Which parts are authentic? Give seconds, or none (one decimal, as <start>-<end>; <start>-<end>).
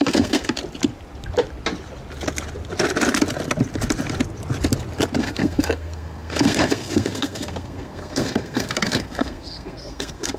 0.6-5.2